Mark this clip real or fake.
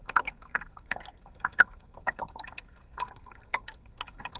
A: fake